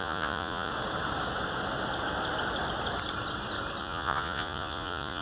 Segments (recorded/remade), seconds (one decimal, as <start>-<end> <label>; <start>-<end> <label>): 0.0-0.7 remade; 0.7-3.8 recorded; 3.8-5.2 remade